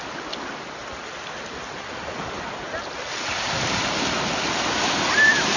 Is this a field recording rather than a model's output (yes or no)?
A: yes